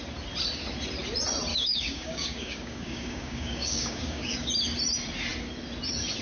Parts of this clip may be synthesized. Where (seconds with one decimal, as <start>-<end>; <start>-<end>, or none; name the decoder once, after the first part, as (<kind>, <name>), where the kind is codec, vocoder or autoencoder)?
1.5-4.5 (codec, DAC)